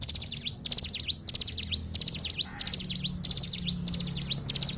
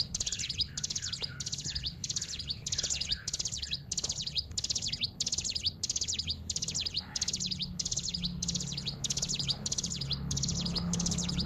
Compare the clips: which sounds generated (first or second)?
second